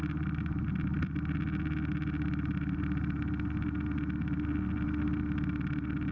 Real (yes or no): yes